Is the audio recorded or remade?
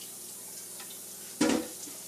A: recorded